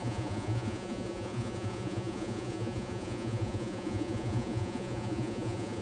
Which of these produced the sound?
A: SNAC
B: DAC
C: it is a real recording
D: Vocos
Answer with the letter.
D